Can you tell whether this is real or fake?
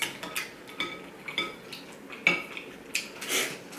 real